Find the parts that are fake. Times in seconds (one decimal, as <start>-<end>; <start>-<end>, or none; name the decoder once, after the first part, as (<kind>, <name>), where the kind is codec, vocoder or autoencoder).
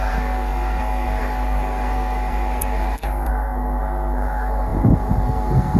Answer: 0.0-5.8 (codec, SNAC)